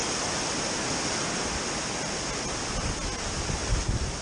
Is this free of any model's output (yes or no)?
yes